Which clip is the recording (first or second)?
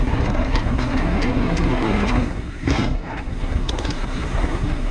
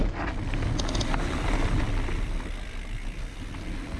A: second